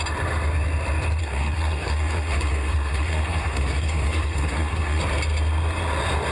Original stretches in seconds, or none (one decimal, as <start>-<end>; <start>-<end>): 0.0-1.2; 5.0-6.3

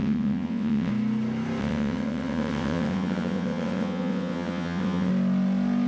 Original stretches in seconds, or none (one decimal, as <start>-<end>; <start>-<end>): 0.9-1.6; 5.1-5.9